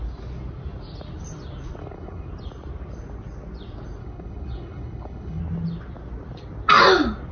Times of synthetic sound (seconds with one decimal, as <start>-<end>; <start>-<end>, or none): 1.8-2.3; 4.0-5.4